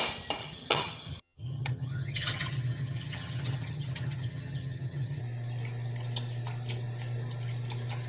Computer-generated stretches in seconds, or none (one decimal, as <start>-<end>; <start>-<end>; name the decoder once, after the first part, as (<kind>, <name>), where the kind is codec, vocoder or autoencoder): 0.4-5.2 (vocoder, HiFi-GAN)